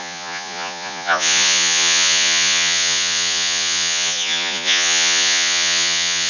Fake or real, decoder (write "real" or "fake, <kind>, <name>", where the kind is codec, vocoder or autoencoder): fake, vocoder, Vocos